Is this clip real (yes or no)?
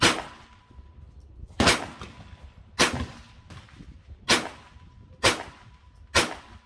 yes